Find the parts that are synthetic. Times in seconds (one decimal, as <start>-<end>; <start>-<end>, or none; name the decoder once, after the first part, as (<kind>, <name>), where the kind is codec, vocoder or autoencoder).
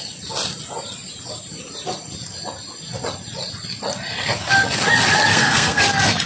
5.3-5.8 (codec, SNAC)